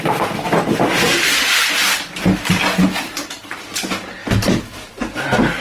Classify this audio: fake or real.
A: real